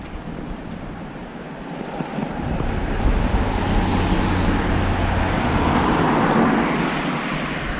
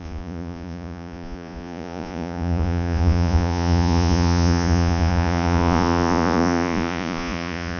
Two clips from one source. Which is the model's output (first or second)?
second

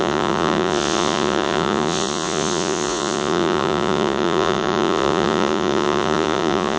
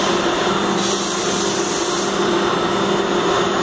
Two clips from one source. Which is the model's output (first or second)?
first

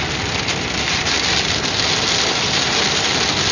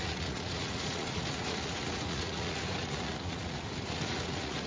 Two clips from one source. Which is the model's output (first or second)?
second